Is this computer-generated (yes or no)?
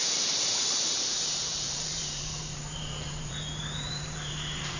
yes